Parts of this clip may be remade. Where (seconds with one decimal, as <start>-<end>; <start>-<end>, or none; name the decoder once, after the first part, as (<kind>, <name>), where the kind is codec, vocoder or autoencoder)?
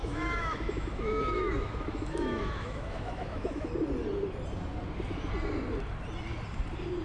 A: 0.0-3.7 (autoencoder, DAC-VAE)